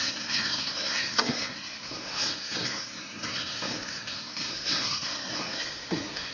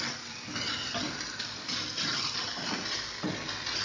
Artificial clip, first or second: first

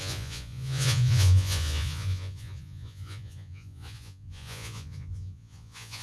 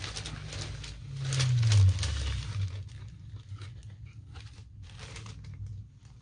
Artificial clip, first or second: first